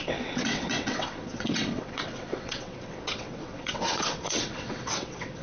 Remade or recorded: remade